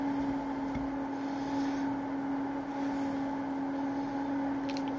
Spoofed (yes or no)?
no